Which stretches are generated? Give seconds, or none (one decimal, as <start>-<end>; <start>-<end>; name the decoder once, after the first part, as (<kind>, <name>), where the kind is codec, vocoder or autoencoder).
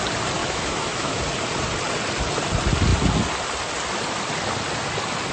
0.4-1.2 (autoencoder, DAC-VAE)